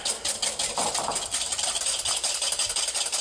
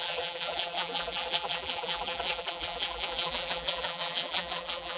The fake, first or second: second